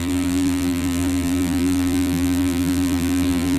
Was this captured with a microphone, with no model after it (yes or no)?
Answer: no